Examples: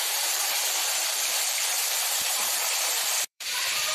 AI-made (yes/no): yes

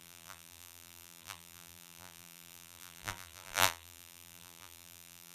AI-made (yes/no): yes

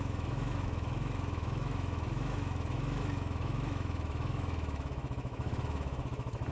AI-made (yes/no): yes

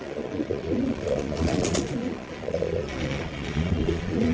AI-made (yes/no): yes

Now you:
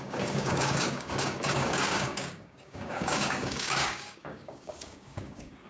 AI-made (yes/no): yes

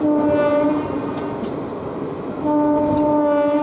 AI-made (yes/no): no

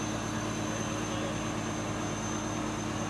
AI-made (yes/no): no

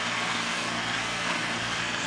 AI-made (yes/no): yes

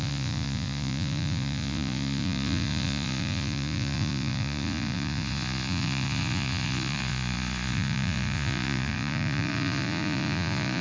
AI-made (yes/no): yes